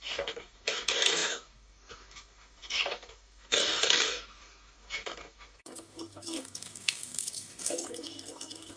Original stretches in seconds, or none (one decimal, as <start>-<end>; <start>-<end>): none